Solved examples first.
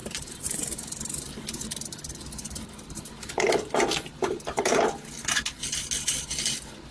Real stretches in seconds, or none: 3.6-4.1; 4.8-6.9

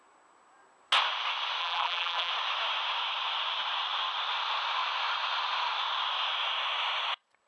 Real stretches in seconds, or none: 0.0-1.6; 2.3-7.5

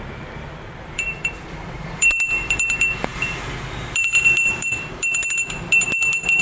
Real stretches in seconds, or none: none

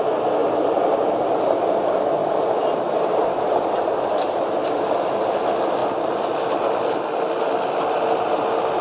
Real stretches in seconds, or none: 0.0-0.4; 1.4-2.2; 5.2-8.8